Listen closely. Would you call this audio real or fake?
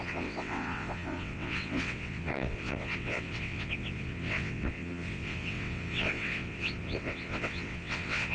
fake